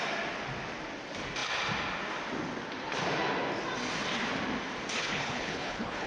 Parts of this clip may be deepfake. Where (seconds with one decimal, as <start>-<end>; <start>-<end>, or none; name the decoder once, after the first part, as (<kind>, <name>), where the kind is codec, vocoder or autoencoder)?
5.0-6.1 (codec, HILCodec)

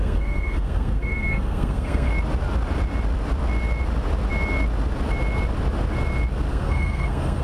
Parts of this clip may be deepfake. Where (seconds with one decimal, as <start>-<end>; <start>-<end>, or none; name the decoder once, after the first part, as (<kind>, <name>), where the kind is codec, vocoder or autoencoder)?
0.0-2.1 (codec, SNAC); 6.5-7.4

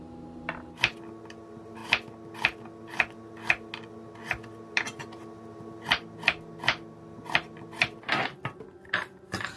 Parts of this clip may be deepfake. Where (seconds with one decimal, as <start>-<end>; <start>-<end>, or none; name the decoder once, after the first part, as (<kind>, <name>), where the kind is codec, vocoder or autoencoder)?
none

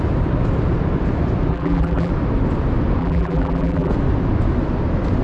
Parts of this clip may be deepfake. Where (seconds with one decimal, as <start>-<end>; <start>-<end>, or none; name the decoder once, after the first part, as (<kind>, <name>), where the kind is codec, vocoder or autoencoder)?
1.5-2.1 (vocoder, BigVGAN v2); 3.0-3.9